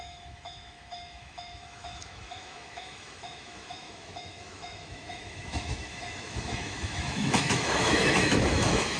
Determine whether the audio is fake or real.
fake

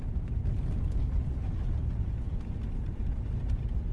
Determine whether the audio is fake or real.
real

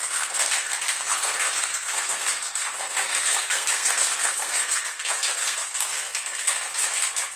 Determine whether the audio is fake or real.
fake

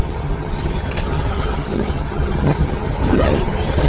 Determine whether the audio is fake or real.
fake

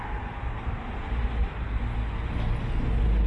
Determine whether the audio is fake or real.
real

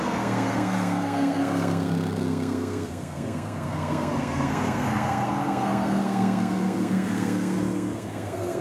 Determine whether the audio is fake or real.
fake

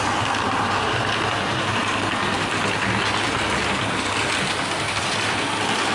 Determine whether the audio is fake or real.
real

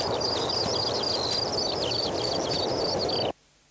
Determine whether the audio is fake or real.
real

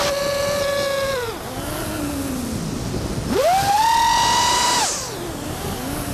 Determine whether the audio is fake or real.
real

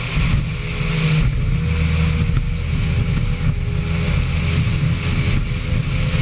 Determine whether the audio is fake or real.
real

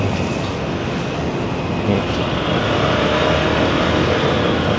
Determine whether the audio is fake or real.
real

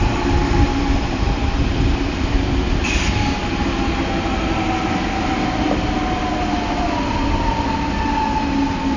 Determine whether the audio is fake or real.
real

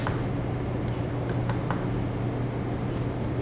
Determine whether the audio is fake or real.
real